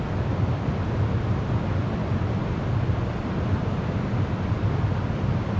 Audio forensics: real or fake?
real